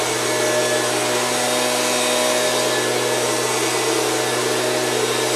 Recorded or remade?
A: recorded